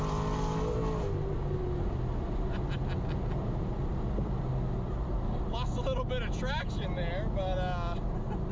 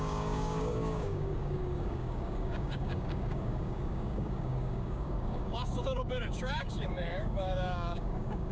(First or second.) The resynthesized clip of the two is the second